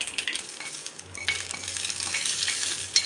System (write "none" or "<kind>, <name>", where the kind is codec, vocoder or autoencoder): codec, DAC